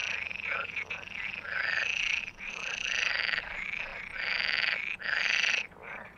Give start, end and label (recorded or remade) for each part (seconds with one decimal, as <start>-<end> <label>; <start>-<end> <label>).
0.0-1.0 recorded; 1.0-3.9 remade; 3.9-5.0 recorded; 5.0-6.2 remade